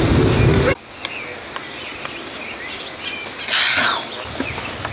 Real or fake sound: real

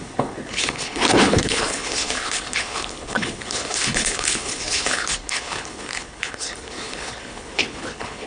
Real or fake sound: fake